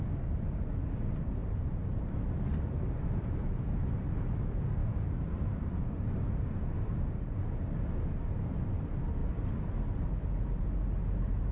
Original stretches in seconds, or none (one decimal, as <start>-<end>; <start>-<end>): 0.0-4.8; 6.6-11.5